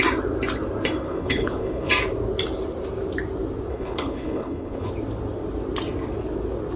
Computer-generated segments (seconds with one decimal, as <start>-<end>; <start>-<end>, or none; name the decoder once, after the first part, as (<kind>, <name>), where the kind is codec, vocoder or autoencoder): 1.0-1.9 (codec, HILCodec); 3.7-4.9